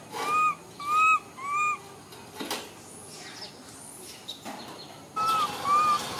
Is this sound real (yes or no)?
yes